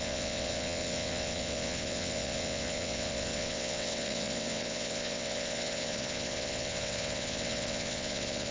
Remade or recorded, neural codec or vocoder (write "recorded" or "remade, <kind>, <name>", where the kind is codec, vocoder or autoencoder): remade, vocoder, WaveNeXt